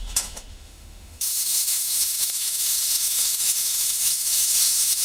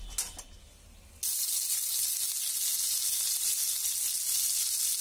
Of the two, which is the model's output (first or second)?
first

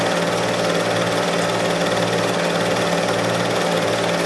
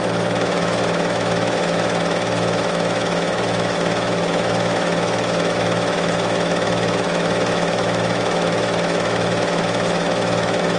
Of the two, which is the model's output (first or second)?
second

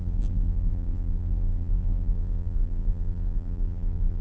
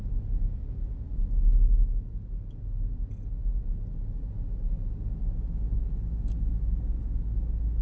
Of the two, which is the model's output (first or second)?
first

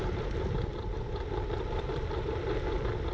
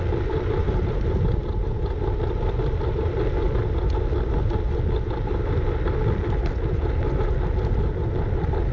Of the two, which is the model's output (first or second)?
first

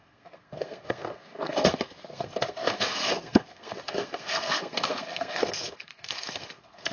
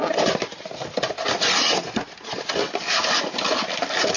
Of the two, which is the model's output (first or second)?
first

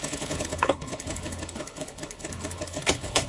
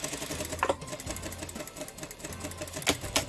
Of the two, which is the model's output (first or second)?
first